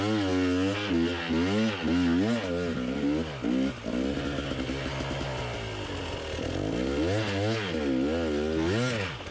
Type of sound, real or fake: real